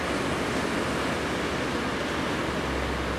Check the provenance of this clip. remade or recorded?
recorded